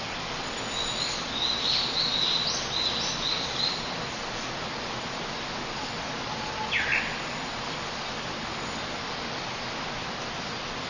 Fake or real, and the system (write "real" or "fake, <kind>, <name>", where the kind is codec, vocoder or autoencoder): real